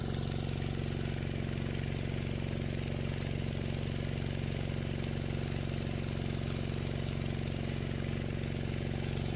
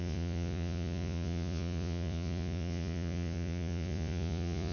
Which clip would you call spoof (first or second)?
second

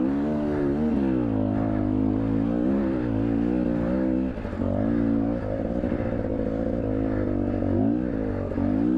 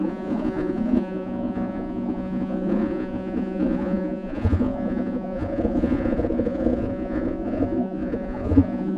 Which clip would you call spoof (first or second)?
second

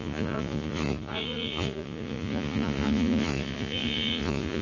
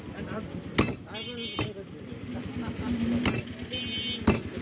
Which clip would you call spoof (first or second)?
first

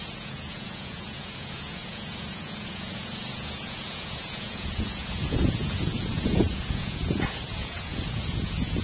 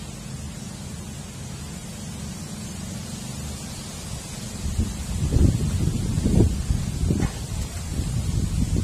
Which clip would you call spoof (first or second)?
first